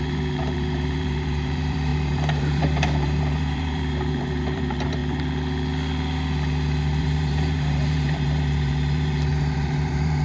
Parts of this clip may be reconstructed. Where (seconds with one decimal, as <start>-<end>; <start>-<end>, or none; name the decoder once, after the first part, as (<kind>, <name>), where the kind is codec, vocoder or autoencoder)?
0.0-5.0 (vocoder, BigVGAN v2); 7.0-10.2